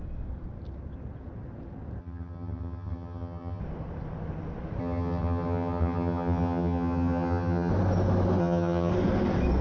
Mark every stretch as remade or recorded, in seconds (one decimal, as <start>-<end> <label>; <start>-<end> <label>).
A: 0.0-2.0 recorded; 2.0-3.6 remade; 3.6-4.8 recorded; 4.8-7.7 remade; 7.7-8.4 recorded; 8.4-8.9 remade; 8.9-9.6 recorded